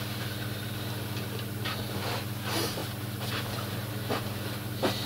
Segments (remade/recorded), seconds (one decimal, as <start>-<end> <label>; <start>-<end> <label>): 0.0-5.1 recorded